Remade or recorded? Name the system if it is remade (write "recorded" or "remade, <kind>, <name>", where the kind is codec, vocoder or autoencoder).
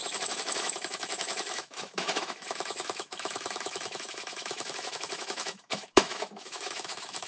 remade, autoencoder, DAC-VAE